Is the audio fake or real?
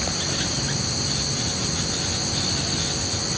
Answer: real